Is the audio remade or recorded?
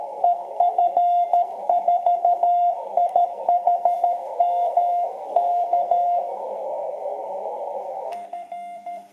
remade